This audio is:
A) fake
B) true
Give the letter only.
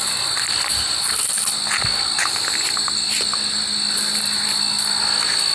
B